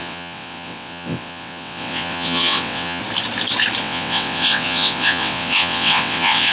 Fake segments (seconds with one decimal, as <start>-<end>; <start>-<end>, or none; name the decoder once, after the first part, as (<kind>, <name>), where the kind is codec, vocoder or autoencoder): 0.0-3.0 (vocoder, WaveNeXt); 3.8-6.5